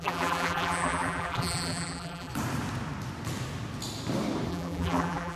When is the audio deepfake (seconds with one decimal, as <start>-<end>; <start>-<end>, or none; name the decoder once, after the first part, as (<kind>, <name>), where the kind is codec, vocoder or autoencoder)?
0.0-2.3 (vocoder, BigVGAN v2); 4.5-5.4